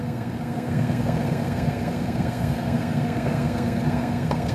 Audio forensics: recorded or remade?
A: remade